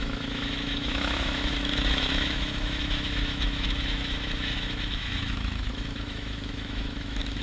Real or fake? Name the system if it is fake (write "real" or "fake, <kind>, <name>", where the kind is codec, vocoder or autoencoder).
fake, autoencoder, DAC-VAE